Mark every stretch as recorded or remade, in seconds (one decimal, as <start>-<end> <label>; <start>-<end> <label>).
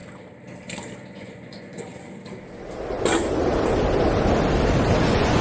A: 0.0-1.1 recorded; 1.1-1.9 remade; 1.9-5.0 recorded; 5.0-5.4 remade